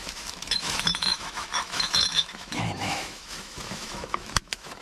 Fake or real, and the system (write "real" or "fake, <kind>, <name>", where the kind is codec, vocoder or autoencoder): fake, autoencoder, DAC-VAE